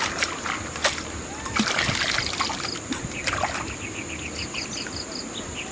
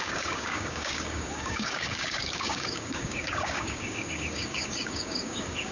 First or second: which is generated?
second